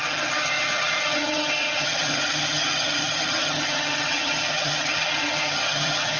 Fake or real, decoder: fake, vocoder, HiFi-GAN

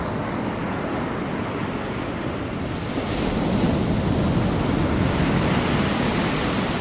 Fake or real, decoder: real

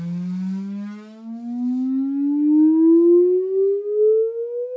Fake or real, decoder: real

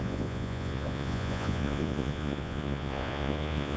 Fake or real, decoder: fake, vocoder, Vocos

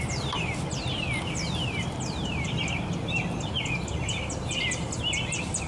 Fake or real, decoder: real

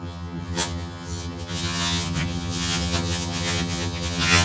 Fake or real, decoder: fake, vocoder, HiFi-GAN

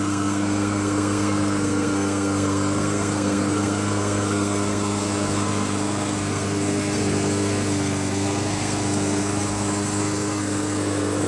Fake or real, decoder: fake, codec, SNAC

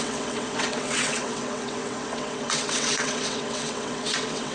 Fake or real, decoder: fake, vocoder, WaveNeXt